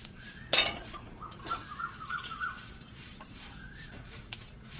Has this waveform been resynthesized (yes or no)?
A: yes